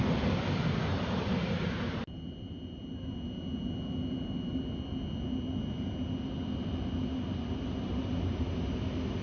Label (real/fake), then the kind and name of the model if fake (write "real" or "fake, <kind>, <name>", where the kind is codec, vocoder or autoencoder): real